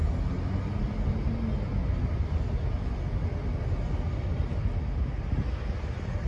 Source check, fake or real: real